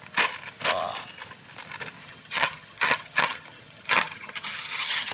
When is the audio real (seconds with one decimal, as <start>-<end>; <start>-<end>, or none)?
0.0-2.0